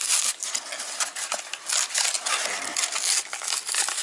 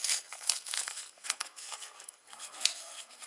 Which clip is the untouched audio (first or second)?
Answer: first